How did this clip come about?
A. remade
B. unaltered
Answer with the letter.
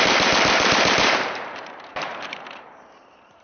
A